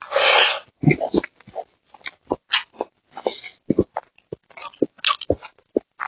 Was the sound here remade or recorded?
recorded